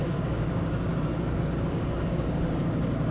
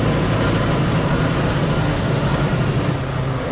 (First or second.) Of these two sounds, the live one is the second